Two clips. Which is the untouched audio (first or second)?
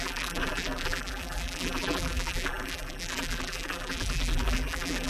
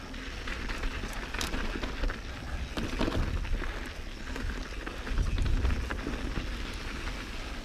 second